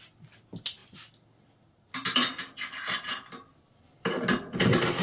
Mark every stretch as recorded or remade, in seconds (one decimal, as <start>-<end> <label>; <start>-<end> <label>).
0.0-5.0 recorded